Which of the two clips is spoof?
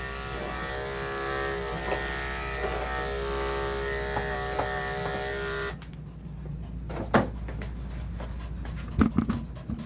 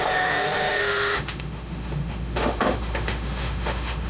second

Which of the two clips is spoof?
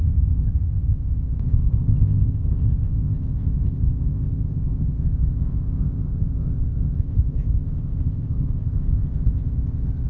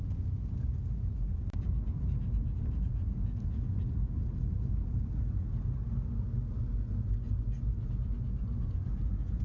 first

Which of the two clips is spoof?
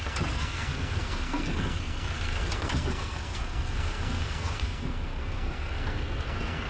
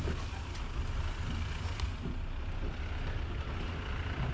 first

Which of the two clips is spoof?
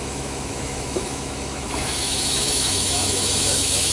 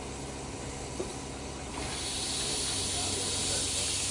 first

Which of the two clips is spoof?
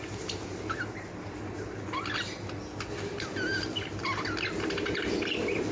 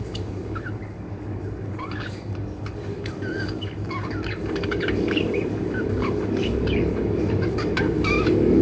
second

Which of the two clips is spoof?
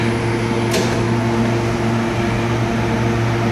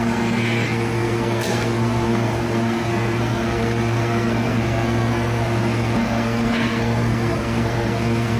second